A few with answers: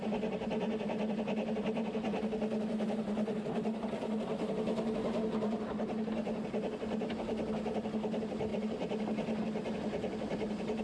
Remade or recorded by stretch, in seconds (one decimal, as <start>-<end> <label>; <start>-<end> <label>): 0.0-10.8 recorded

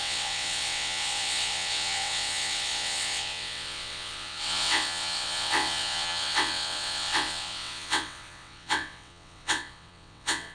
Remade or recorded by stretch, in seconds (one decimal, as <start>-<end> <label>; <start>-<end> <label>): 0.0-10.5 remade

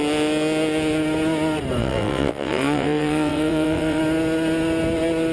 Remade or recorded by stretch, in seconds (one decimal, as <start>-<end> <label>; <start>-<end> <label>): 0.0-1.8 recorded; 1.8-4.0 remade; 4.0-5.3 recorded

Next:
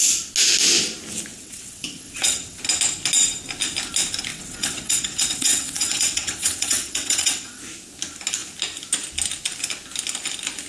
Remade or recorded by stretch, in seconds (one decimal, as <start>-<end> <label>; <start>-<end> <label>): 0.0-1.3 recorded; 1.3-2.6 remade; 2.6-4.3 recorded; 4.3-7.6 remade; 7.6-10.7 recorded